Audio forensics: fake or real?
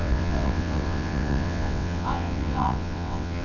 fake